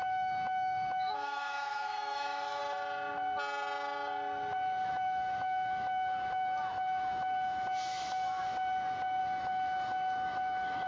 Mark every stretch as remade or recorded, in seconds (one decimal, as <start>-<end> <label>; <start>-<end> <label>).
0.0-2.6 remade; 2.6-4.9 recorded; 4.9-8.4 remade; 8.4-9.2 recorded; 9.2-10.9 remade